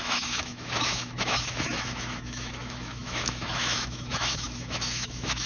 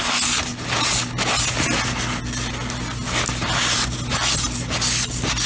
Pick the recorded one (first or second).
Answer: second